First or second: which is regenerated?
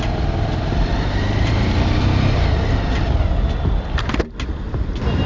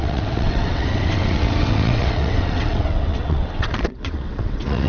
second